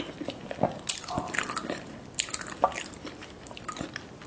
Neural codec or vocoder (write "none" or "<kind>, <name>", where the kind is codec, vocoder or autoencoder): none